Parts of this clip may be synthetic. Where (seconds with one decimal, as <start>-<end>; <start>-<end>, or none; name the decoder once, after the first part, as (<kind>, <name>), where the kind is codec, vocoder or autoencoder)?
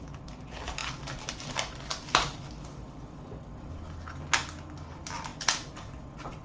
none